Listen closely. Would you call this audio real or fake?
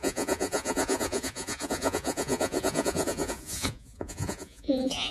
fake